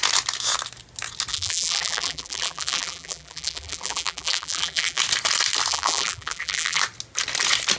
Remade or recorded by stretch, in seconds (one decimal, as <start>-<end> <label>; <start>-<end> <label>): 0.0-1.3 recorded; 1.3-5.0 remade; 5.0-5.7 recorded; 5.7-6.8 remade; 6.8-7.8 recorded